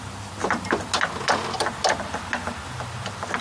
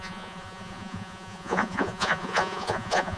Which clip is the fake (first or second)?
second